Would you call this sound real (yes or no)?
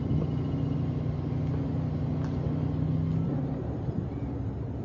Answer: yes